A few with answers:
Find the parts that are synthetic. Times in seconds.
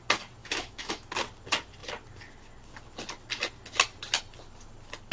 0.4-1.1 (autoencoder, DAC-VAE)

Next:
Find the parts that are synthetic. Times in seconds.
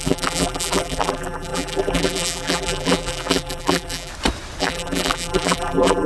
0.0-4.1 (vocoder, BigVGAN v2); 4.6-6.1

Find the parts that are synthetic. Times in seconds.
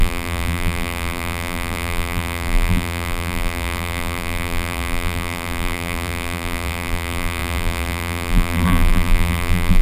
0.0-9.8 (vocoder, BigVGAN v2)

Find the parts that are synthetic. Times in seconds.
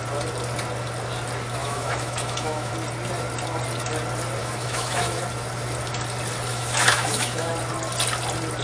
1.6-2.7 (autoencoder, DAC-VAE); 4.4-5.2; 6.5-7.5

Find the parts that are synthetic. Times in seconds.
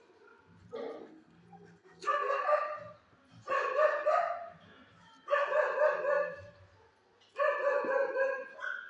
1.0-2.4 (codec, SNAC)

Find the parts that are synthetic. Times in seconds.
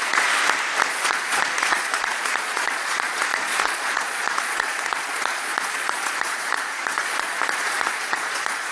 0.0-0.4 (vocoder, Vocos); 0.9-8.7